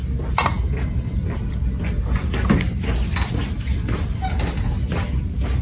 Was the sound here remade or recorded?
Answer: recorded